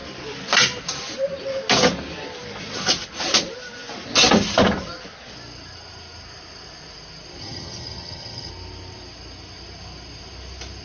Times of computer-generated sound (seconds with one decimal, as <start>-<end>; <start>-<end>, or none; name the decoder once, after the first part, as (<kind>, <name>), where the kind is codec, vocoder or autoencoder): 7.4-8.5 (vocoder, HiFi-GAN)